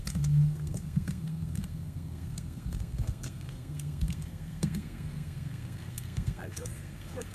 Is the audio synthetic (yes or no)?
yes